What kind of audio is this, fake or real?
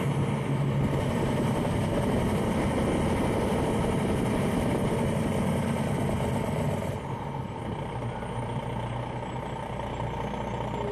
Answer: real